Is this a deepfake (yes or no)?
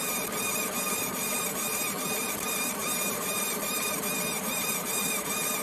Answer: yes